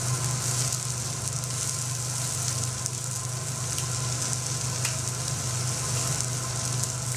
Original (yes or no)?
yes